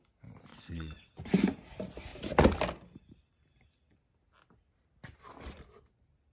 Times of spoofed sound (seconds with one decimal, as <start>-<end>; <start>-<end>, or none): 0.5-1.2